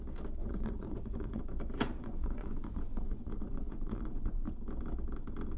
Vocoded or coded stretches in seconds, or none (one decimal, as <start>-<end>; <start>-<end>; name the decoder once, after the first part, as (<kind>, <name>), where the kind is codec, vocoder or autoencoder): 0.4-1.4 (vocoder, Vocos); 2.0-4.5